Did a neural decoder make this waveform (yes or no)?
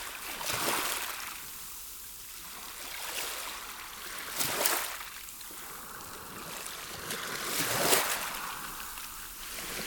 no